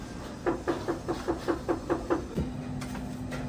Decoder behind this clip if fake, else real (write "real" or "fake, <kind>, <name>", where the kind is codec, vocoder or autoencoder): real